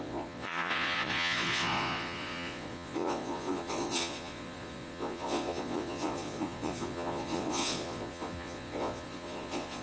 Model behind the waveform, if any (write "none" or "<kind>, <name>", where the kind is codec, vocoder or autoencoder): vocoder, Vocos